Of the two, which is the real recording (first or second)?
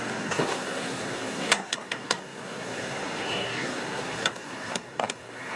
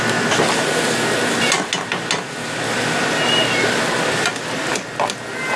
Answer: second